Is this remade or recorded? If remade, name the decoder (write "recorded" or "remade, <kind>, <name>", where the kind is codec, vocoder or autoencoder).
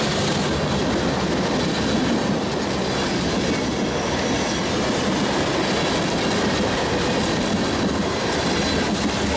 recorded